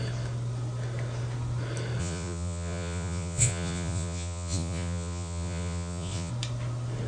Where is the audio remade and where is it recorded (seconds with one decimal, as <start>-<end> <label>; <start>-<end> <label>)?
0.0-2.0 recorded; 2.0-6.3 remade; 6.3-7.1 recorded